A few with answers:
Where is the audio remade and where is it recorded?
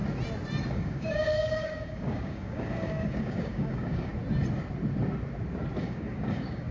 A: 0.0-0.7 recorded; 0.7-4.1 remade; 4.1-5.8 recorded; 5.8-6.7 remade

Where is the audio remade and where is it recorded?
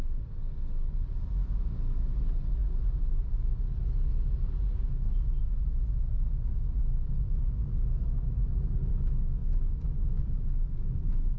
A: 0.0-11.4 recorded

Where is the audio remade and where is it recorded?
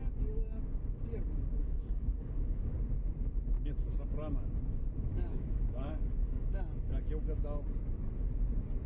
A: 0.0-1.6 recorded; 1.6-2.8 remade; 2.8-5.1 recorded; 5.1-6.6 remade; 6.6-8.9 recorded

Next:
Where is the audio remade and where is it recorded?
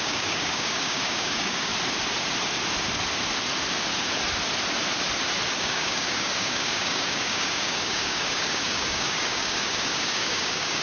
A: 0.0-1.7 remade; 1.7-5.5 recorded; 5.5-10.8 remade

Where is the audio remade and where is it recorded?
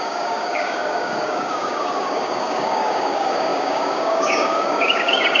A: 0.0-5.4 remade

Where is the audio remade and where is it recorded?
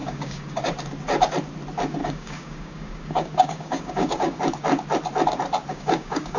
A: 0.0-0.6 remade; 0.6-2.0 recorded; 2.0-4.4 remade; 4.4-5.7 recorded; 5.7-6.4 remade